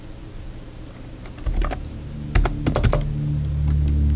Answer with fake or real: real